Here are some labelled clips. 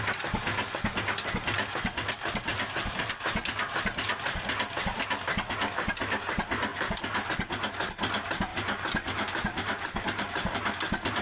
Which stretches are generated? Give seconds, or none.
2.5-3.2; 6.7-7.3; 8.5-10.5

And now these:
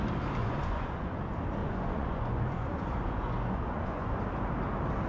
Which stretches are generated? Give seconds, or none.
0.4-1.2; 1.6-4.2